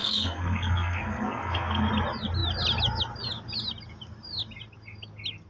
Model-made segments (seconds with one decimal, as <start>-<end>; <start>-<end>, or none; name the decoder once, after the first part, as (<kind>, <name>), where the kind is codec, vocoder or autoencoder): 0.0-1.9 (codec, SNAC)